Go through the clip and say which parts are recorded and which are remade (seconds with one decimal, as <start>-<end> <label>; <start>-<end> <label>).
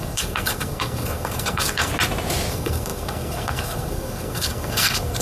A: 0.0-1.9 remade; 1.9-2.5 recorded; 2.5-5.2 remade